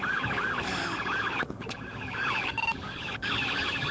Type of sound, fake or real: fake